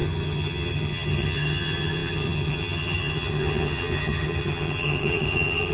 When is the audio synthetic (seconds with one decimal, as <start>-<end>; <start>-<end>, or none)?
0.0-5.7